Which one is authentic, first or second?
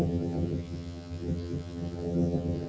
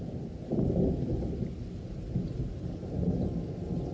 second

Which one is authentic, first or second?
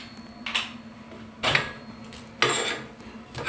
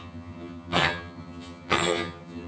first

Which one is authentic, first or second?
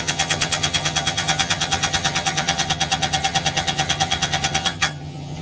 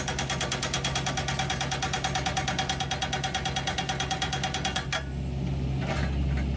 second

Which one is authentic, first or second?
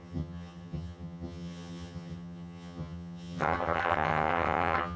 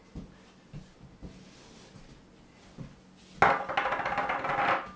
second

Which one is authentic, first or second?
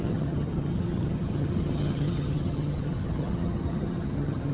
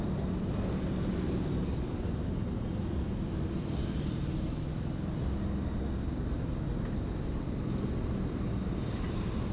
second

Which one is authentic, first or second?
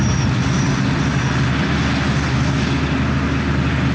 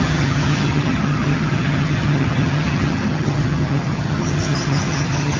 first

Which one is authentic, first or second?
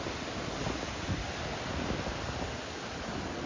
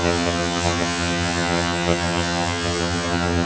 first